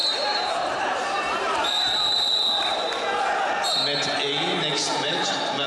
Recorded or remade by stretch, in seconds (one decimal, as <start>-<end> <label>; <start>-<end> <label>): 0.0-2.3 remade; 2.3-4.9 recorded; 4.9-5.7 remade